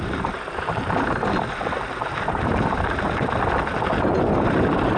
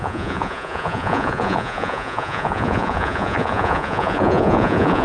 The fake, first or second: second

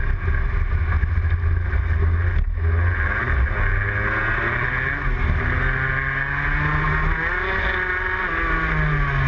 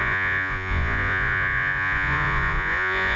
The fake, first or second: second